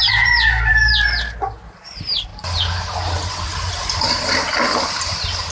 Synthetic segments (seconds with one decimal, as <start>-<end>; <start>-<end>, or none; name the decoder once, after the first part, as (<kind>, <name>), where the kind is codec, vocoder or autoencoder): 0.0-0.7 (vocoder, BigVGAN v2); 1.9-2.3; 3.7-4.4; 5.0-5.5